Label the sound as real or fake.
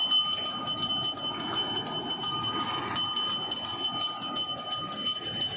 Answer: real